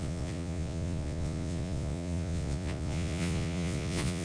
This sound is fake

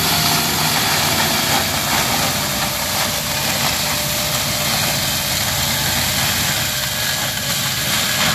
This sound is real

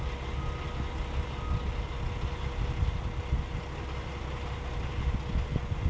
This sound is real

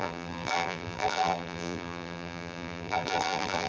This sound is fake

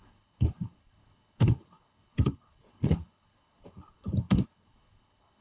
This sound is fake